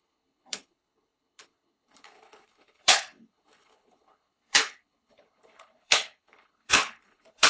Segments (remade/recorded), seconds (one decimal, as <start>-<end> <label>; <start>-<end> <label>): 0.0-7.5 remade